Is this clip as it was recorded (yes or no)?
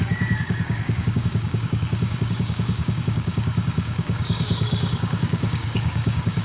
no